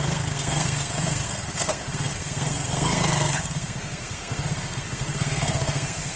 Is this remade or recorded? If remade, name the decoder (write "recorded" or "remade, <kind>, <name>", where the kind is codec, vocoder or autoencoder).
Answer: remade, codec, SNAC